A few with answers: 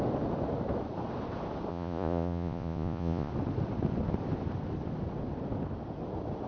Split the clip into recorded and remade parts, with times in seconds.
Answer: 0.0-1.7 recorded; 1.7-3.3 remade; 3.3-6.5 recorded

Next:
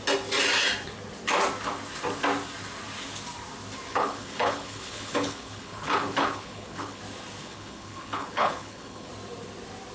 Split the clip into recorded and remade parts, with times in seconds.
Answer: 0.0-3.9 recorded; 3.9-7.0 remade; 7.0-7.4 recorded; 7.4-9.1 remade; 9.1-9.9 recorded

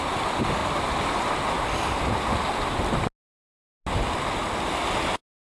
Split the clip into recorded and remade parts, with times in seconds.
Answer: 0.0-5.4 recorded